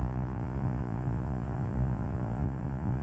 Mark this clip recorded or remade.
remade